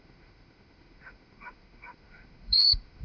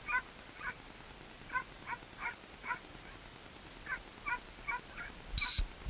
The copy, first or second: first